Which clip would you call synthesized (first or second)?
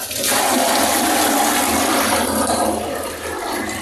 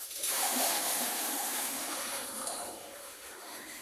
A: second